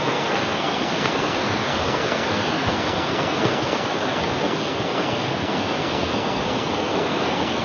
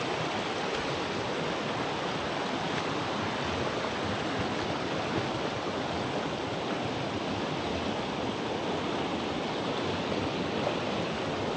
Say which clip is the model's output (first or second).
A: first